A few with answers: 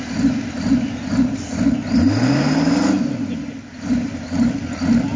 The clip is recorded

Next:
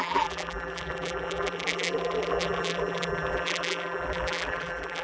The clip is remade